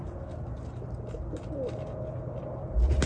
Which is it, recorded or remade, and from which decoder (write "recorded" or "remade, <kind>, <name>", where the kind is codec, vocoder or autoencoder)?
recorded